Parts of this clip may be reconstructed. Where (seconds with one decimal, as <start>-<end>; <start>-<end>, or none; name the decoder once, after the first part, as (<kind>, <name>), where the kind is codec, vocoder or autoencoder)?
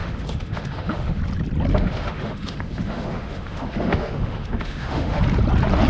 0.0-1.2 (autoencoder, DAC-VAE); 1.7-5.2